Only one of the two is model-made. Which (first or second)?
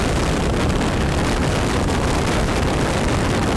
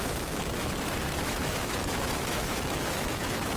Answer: second